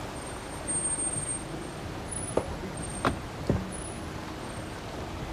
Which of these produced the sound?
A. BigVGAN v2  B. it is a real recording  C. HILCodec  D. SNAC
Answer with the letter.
B